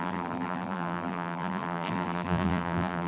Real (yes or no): no